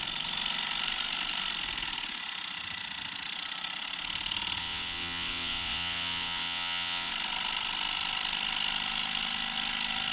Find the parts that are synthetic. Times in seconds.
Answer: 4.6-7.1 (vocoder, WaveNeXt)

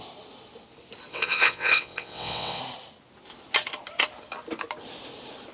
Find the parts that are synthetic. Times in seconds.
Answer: 1.1-2.6 (vocoder, WaveNeXt)

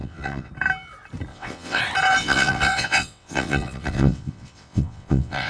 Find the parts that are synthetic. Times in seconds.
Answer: 0.0-0.5 (vocoder, WaveNeXt); 1.3-1.8; 2.2-5.5